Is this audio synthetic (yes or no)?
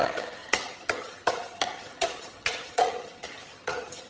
yes